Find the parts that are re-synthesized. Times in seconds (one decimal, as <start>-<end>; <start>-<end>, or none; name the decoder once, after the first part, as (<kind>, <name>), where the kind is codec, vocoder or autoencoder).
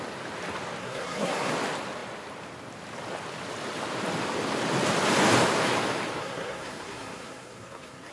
0.8-1.5 (codec, SNAC); 6.2-8.1